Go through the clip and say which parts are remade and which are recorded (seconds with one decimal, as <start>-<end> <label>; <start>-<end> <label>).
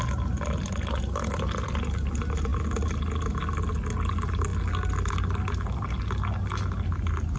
0.0-7.4 recorded